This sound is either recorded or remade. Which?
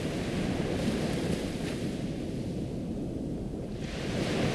recorded